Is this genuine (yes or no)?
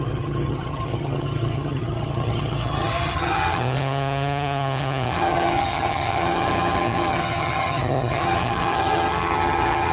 no